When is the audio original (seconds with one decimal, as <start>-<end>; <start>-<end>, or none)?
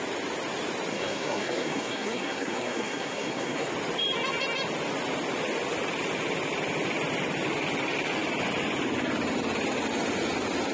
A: 0.0-0.9; 3.7-10.7